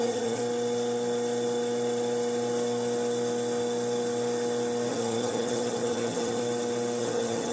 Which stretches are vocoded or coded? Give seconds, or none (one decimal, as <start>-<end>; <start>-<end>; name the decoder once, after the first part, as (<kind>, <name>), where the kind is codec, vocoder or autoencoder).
0.0-0.4 (vocoder, HiFi-GAN); 4.9-6.4; 7.0-7.5